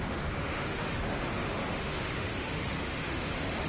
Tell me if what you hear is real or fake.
fake